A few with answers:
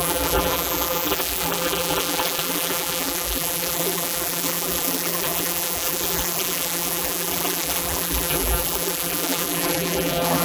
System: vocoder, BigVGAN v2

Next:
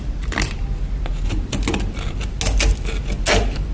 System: none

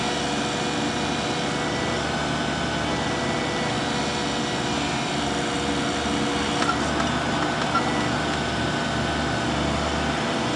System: none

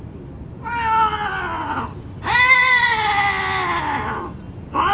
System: none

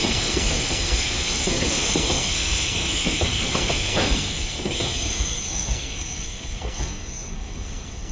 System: codec, SNAC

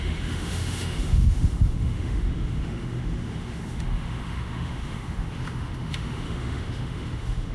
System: autoencoder, DAC-VAE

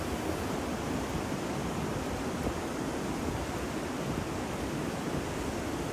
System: none